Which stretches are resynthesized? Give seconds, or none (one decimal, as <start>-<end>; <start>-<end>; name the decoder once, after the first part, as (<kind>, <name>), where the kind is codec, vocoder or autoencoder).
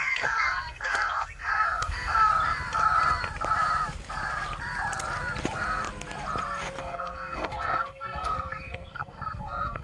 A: 0.0-2.3 (codec, SNAC); 6.8-9.8